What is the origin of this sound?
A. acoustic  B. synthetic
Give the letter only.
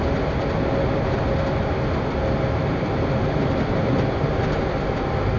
A